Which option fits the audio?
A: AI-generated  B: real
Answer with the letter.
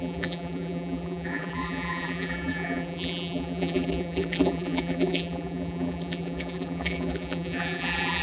A